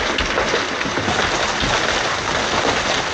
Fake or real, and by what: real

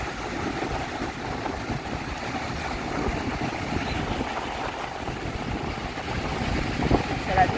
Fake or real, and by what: real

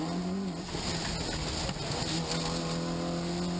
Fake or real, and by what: real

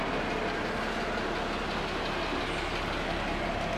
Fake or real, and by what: real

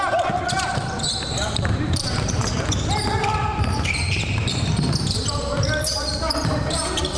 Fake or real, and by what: fake, vocoder, BigVGAN v2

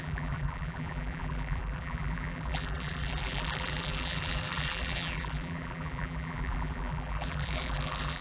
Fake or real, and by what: fake, vocoder, BigVGAN v2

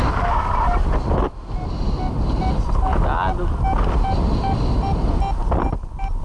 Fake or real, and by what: real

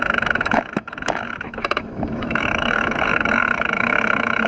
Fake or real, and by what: fake, autoencoder, DAC-VAE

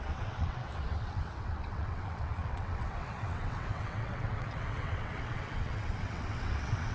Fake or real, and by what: fake, vocoder, WaveNeXt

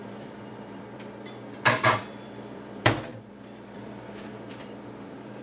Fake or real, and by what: fake, vocoder, BigVGAN v2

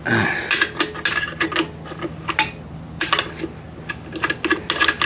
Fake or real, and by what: real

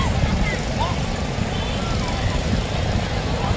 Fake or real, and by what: real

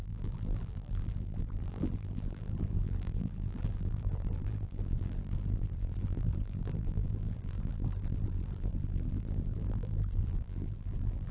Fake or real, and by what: fake, vocoder, BigVGAN v2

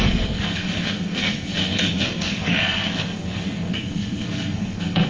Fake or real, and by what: fake, codec, SNAC